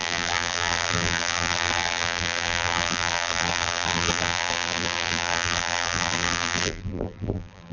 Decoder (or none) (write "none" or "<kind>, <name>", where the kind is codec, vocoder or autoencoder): vocoder, BigVGAN v2